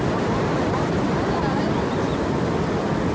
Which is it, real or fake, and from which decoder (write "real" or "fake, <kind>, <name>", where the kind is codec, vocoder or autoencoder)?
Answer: real